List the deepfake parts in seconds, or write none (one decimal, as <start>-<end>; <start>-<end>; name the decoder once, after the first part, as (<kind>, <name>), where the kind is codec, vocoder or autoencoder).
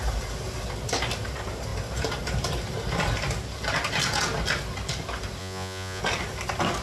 5.4-6.0 (vocoder, Vocos)